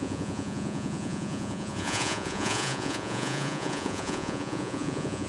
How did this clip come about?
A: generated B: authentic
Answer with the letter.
A